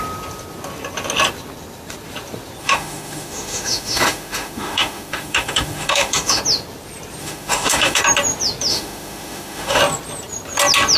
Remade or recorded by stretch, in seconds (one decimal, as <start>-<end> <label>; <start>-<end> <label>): 0.0-2.6 recorded; 2.6-6.4 remade; 6.4-7.2 recorded; 7.2-8.0 remade; 8.0-8.7 recorded; 8.7-9.8 remade; 9.8-11.0 recorded